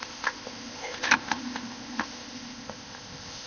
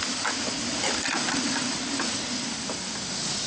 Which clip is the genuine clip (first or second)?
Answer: second